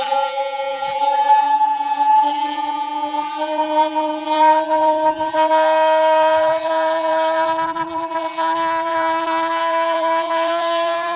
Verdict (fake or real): fake